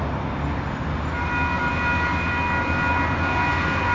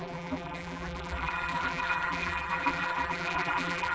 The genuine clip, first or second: first